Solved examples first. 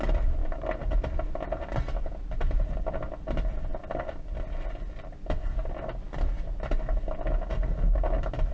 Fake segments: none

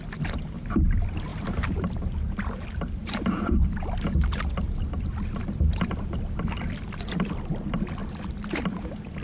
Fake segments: 1.3-1.9 (vocoder, BigVGAN v2); 3.0-3.5; 8.0-8.5